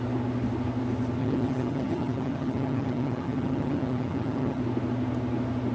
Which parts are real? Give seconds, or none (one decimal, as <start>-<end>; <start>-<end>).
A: 0.0-1.2; 4.6-5.7